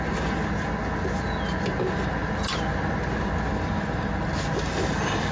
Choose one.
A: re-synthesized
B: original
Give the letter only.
B